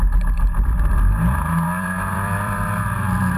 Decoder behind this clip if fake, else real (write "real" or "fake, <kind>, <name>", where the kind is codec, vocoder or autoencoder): fake, vocoder, BigVGAN v2